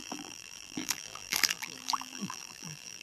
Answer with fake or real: fake